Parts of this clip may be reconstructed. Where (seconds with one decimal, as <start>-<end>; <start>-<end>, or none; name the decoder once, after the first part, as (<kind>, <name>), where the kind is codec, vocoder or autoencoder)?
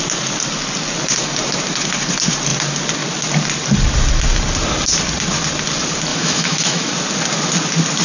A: 6.1-6.9 (autoencoder, DAC-VAE)